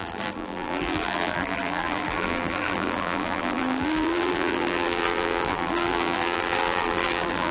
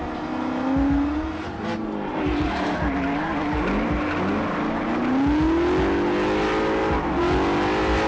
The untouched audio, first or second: second